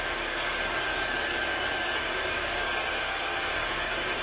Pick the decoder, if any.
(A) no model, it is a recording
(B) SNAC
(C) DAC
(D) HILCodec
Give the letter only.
C